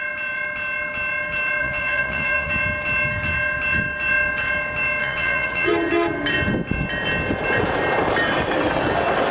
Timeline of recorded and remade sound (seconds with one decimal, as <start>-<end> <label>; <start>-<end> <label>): 0.0-1.6 recorded; 1.6-2.5 remade; 2.5-5.0 recorded; 5.0-5.7 remade; 5.7-9.3 recorded